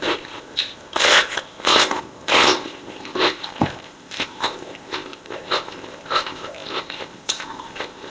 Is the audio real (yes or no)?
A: no